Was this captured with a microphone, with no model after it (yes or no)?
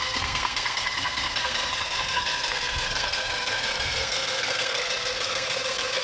no